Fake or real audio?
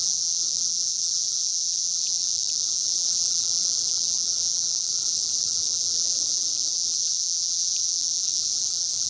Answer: fake